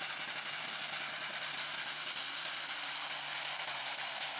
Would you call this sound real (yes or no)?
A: yes